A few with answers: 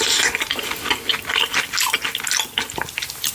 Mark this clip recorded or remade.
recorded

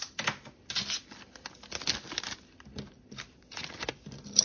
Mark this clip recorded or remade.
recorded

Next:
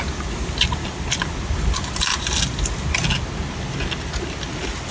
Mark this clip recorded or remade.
recorded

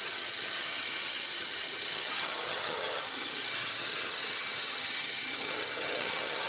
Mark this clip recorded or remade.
remade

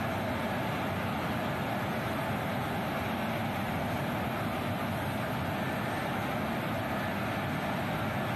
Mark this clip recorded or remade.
recorded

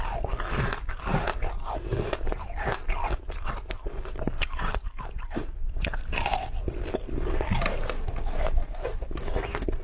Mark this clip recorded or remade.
recorded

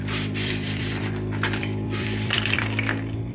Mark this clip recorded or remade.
remade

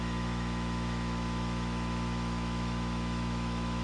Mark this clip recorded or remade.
remade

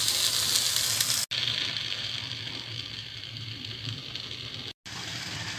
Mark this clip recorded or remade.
recorded